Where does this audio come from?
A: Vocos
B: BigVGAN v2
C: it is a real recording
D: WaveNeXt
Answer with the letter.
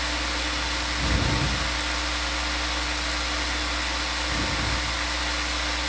C